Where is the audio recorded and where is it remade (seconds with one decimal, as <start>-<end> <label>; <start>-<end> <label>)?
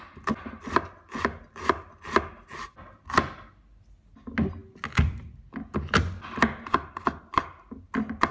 0.0-8.3 recorded